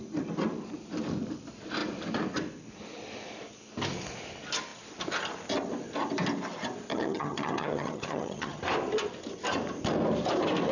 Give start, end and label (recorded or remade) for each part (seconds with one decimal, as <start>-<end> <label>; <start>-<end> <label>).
0.0-6.9 recorded; 6.9-8.6 remade; 8.6-10.7 recorded

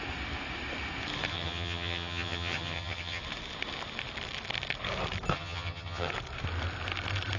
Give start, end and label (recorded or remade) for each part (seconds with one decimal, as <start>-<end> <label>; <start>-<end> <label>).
0.0-1.3 recorded; 1.3-3.2 remade; 3.2-5.3 recorded; 5.3-6.1 remade; 6.1-7.4 recorded

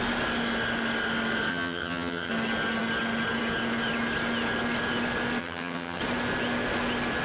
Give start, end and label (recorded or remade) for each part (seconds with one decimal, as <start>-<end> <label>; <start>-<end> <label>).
0.0-1.5 recorded; 1.5-2.3 remade; 2.3-5.4 recorded; 5.4-6.0 remade; 6.0-7.2 recorded

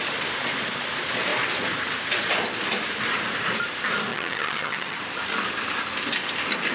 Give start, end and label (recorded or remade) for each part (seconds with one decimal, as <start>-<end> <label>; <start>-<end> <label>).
0.0-4.1 recorded; 4.1-5.0 remade; 5.0-6.7 recorded

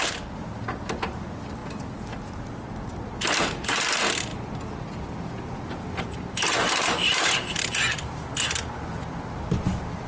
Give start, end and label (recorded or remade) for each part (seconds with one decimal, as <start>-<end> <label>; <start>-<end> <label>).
0.0-10.1 recorded

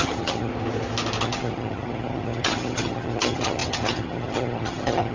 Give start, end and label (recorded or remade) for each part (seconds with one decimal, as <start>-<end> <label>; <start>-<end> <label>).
0.0-0.5 remade; 0.5-1.2 recorded; 1.2-5.1 remade